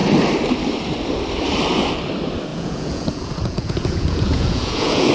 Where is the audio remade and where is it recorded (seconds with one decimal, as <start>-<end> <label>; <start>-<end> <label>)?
0.0-2.5 recorded; 2.5-5.1 remade